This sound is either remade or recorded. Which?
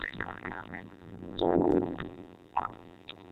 remade